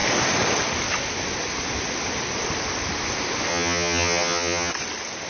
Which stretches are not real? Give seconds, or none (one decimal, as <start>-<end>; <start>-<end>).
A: 3.5-4.7

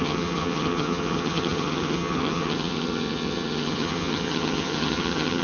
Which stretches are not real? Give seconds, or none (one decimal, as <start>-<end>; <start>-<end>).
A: 0.0-5.4

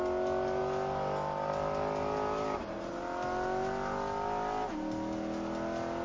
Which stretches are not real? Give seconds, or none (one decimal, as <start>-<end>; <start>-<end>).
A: none